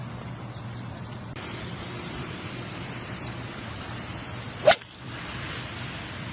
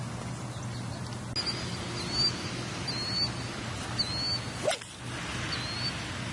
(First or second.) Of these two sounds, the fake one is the first